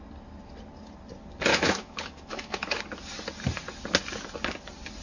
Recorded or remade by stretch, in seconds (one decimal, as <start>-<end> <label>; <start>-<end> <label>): 0.0-1.5 recorded; 1.5-2.8 remade; 2.8-5.0 recorded